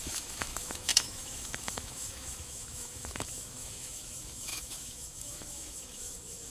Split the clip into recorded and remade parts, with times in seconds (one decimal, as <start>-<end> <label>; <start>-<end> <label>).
0.0-6.5 remade